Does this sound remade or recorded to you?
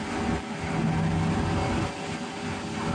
recorded